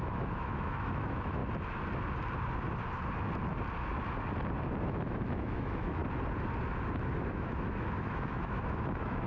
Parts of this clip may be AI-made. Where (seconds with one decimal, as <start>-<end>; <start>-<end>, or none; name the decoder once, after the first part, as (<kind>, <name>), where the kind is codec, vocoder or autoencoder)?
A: 0.0-1.4 (autoencoder, DAC-VAE); 4.8-6.0; 7.3-9.3